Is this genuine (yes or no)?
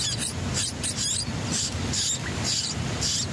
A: yes